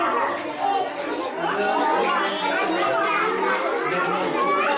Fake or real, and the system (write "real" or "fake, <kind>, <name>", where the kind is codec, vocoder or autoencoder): real